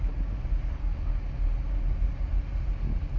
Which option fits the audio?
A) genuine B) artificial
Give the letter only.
A